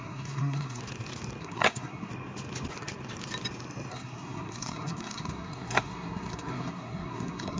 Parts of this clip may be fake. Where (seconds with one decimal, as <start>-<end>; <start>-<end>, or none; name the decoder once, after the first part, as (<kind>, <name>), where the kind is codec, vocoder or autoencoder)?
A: 0.0-0.8 (codec, SNAC); 1.4-2.1; 3.9-7.6